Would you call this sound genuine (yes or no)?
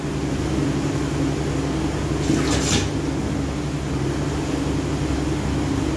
yes